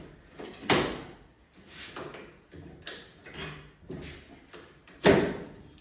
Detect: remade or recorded recorded